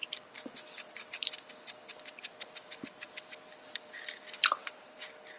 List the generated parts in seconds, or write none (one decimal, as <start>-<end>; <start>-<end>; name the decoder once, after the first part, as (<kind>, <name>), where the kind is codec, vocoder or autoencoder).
1.1-5.4 (vocoder, BigVGAN v2)